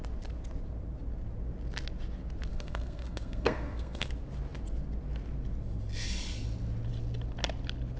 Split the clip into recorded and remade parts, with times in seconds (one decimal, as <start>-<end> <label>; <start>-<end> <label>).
0.0-2.5 recorded; 2.5-4.1 remade; 4.1-8.0 recorded

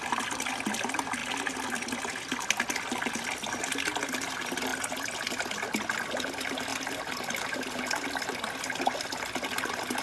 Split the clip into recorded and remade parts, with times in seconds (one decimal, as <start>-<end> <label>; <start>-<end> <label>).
0.0-10.0 recorded

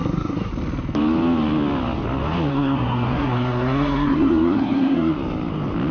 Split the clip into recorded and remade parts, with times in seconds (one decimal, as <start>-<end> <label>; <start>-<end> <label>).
0.0-0.5 remade; 0.5-2.5 recorded; 2.5-5.1 remade; 5.1-5.9 recorded

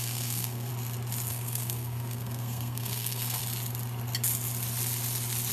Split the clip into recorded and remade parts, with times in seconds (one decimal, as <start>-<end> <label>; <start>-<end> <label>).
0.0-0.7 remade; 0.7-1.3 recorded; 1.3-3.4 remade; 3.4-5.5 recorded

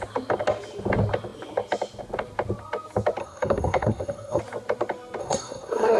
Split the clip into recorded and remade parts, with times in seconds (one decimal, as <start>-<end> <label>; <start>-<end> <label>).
0.0-3.2 recorded; 3.2-4.4 remade; 4.4-5.2 recorded; 5.2-6.0 remade